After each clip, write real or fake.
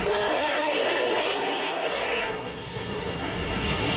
fake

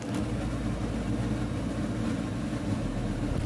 real